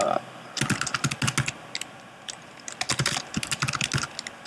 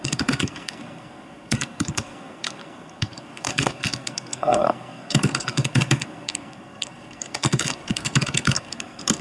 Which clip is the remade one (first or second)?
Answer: second